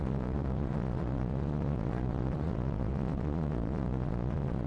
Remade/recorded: remade